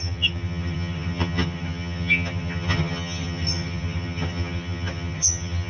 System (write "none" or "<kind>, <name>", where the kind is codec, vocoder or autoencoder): vocoder, HiFi-GAN